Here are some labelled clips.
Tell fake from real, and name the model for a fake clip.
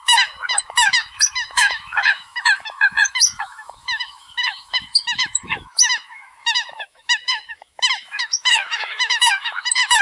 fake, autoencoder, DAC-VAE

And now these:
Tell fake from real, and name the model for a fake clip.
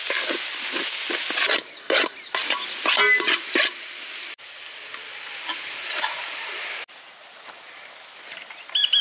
real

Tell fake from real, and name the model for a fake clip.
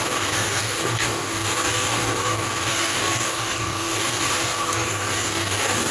fake, codec, DAC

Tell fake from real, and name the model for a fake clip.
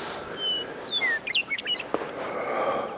real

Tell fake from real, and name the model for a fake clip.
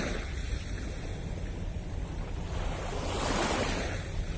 real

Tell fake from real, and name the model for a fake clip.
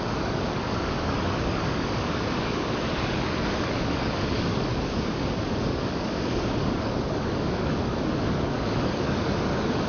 fake, codec, DAC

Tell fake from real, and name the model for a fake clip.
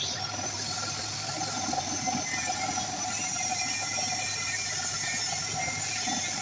fake, vocoder, BigVGAN v2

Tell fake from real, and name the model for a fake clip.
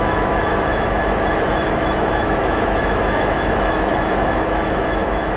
fake, autoencoder, DAC-VAE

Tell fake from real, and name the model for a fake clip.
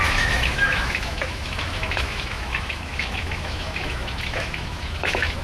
fake, autoencoder, DAC-VAE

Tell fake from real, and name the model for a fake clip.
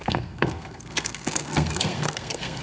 fake, codec, SNAC